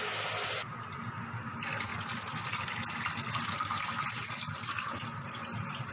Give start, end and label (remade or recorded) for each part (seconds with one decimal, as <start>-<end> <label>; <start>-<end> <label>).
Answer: 0.0-5.9 recorded